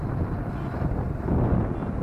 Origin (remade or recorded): recorded